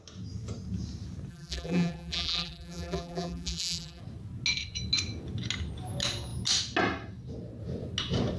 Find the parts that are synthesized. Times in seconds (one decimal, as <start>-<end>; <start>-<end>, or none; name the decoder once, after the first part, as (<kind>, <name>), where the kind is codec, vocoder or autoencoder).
1.3-4.0 (vocoder, BigVGAN v2)